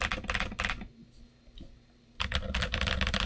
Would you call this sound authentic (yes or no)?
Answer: yes